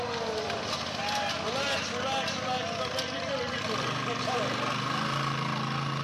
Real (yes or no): yes